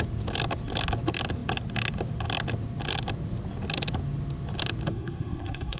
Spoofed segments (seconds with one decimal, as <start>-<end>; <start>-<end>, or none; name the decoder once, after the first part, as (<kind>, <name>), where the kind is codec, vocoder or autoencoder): 4.9-5.8 (codec, SNAC)